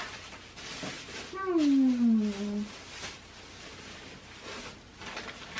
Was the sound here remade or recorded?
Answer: recorded